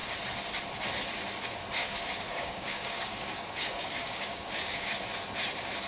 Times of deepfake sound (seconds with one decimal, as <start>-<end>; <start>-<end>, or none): 1.8-5.0